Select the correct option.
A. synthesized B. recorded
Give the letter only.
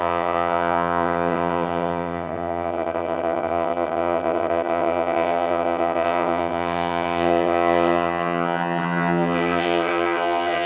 A